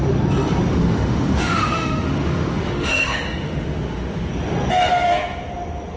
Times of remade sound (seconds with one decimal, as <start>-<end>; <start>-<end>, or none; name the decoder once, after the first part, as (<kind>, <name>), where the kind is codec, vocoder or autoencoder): 0.7-4.3 (autoencoder, DAC-VAE)